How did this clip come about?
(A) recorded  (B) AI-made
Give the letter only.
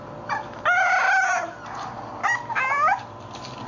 A